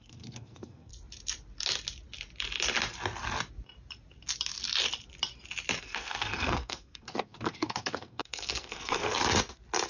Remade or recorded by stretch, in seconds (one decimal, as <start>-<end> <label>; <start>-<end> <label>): 0.0-0.9 remade; 0.9-5.8 recorded; 5.8-9.1 remade; 9.1-9.9 recorded